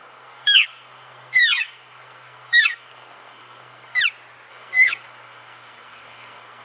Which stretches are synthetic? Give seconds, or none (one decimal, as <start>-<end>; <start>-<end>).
0.0-4.0; 4.5-6.6